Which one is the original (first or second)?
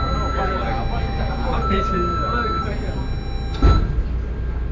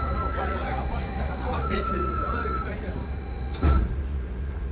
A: first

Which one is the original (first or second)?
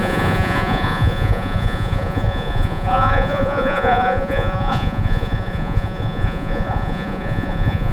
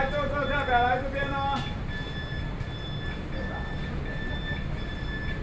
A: second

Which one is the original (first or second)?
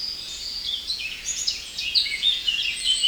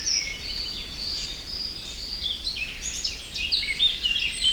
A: second